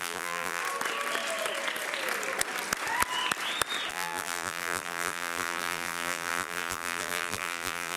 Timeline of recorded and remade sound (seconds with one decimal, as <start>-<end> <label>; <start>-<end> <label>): 0.0-0.6 remade; 0.6-3.9 recorded; 3.9-8.0 remade